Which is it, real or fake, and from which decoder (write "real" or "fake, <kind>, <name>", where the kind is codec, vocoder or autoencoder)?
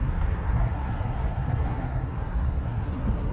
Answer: fake, codec, SNAC